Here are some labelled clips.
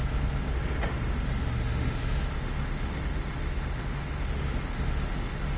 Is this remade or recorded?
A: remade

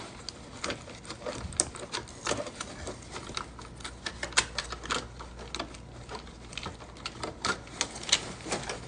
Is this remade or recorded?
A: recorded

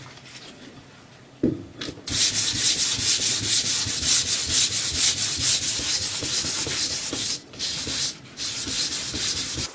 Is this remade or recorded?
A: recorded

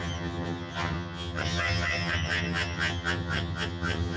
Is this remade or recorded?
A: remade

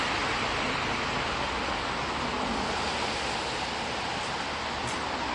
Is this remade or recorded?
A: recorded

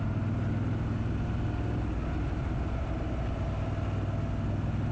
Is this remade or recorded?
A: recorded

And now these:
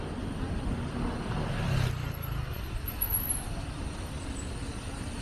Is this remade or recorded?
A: recorded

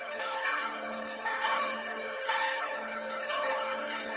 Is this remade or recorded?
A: remade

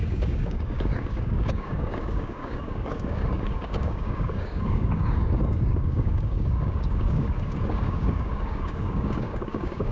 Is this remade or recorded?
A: remade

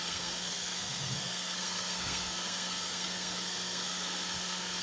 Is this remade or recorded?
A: remade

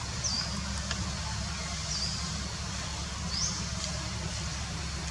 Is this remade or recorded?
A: recorded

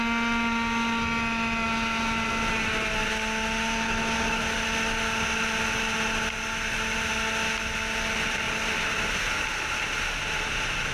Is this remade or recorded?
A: recorded